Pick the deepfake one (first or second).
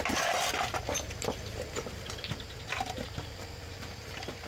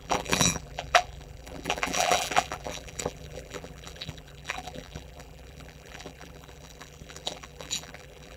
second